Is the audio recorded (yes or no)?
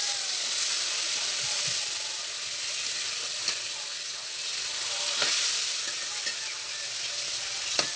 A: yes